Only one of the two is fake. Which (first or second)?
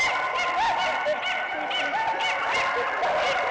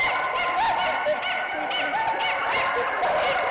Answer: second